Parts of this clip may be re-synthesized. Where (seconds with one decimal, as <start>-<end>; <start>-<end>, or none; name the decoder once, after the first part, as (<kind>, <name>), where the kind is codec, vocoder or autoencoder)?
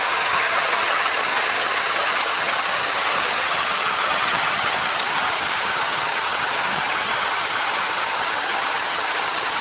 0.0-9.6 (vocoder, HiFi-GAN)